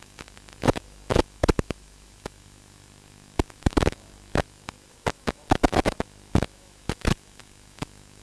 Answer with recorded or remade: remade